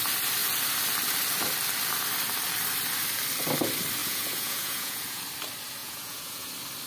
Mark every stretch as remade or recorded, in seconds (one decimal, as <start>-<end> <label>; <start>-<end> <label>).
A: 0.0-4.0 recorded; 4.0-5.2 remade; 5.2-5.8 recorded; 5.8-6.5 remade; 6.5-6.9 recorded